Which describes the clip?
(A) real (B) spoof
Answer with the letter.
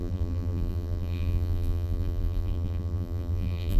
B